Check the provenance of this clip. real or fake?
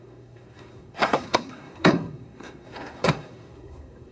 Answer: fake